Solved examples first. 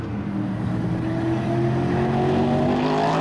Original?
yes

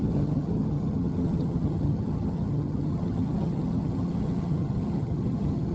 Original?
no